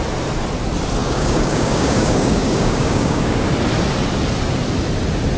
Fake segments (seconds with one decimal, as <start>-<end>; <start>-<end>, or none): 1.0-3.5